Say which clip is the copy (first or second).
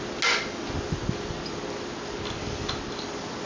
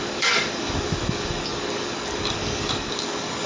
second